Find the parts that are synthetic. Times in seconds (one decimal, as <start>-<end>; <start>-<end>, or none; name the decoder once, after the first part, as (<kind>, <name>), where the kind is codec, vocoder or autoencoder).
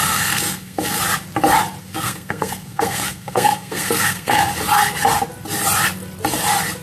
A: 0.0-1.0 (codec, SNAC); 1.8-4.4